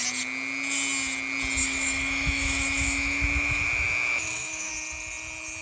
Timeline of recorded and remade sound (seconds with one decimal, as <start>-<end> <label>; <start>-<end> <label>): 0.0-1.6 recorded; 1.6-4.7 remade; 4.7-5.6 recorded